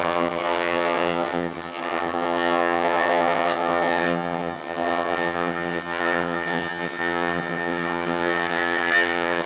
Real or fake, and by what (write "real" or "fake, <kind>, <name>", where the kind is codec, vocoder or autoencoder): fake, vocoder, HiFi-GAN